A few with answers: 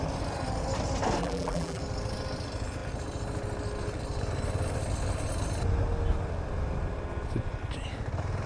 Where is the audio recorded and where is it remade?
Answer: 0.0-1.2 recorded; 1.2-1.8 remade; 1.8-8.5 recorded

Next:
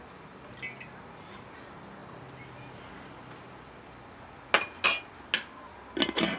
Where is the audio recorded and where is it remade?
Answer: 0.0-2.0 recorded; 2.0-3.9 remade; 3.9-6.4 recorded

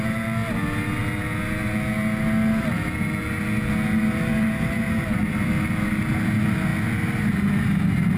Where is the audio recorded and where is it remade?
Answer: 0.0-8.2 recorded

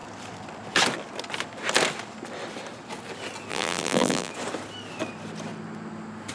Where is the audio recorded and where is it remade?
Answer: 0.0-3.5 recorded; 3.5-4.3 remade; 4.3-6.3 recorded

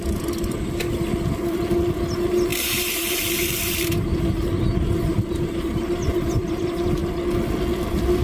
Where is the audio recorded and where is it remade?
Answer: 0.0-2.5 recorded; 2.5-6.6 remade; 6.6-8.2 recorded

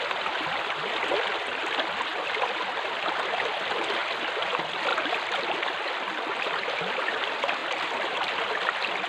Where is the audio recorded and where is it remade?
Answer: 0.0-2.1 recorded; 2.1-3.3 remade; 3.3-4.9 recorded; 4.9-6.9 remade; 6.9-7.6 recorded; 7.6-8.5 remade; 8.5-9.1 recorded

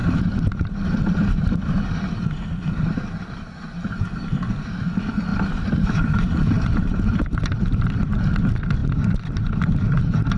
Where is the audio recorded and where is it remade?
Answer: 0.0-4.3 remade; 4.3-5.3 recorded; 5.3-8.2 remade; 8.2-10.4 recorded

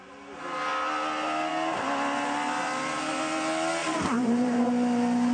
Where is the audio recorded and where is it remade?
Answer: 0.0-3.8 recorded; 3.8-4.6 remade; 4.6-5.3 recorded